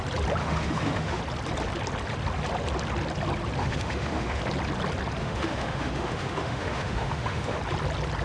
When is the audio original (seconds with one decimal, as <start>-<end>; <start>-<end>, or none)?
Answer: 0.0-0.4; 1.2-3.6; 4.4-5.2; 7.6-8.2